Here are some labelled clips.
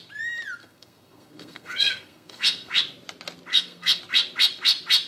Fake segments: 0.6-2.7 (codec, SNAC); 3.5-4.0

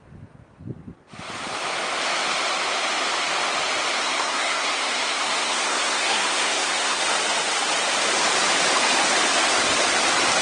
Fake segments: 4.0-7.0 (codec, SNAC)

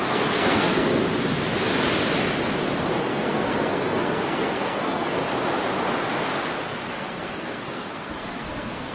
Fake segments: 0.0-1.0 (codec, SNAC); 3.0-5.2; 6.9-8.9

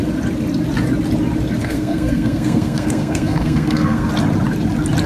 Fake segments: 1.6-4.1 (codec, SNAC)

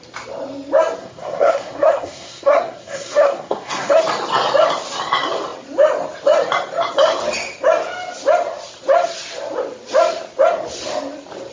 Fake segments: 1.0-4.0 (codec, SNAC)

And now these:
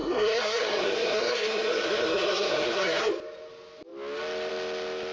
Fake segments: 0.0-3.1 (codec, SNAC)

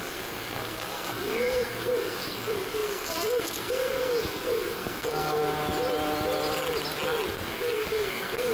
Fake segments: 0.0-5.4 (codec, SNAC); 7.3-8.5

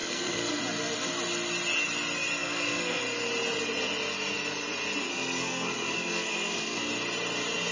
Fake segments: 0.0-0.6 (codec, SNAC); 2.4-3.0; 5.1-6.9